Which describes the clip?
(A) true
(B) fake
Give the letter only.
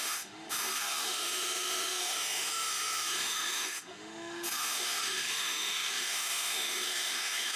B